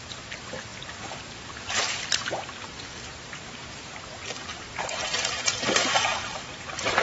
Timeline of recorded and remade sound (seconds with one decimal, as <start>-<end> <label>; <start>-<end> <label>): 0.0-6.1 remade; 6.1-6.6 recorded; 6.6-7.0 remade